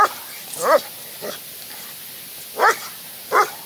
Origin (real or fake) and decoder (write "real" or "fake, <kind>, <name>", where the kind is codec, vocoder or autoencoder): real